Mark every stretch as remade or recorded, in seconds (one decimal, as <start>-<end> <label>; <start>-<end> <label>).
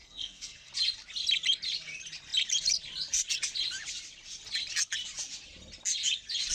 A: 0.0-0.7 remade; 0.7-6.5 recorded